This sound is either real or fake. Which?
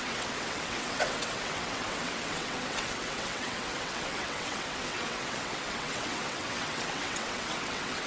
fake